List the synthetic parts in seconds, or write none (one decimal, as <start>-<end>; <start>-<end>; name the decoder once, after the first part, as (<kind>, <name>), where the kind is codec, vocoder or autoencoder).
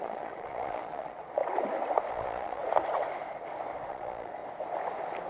0.0-1.4 (vocoder, Vocos); 2.1-2.6; 3.9-4.4